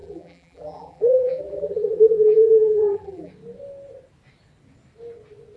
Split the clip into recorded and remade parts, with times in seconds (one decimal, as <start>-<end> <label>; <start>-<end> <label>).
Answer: 0.0-3.3 remade; 3.3-5.6 recorded